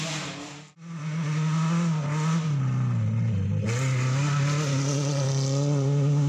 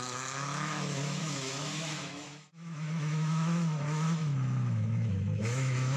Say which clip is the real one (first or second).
first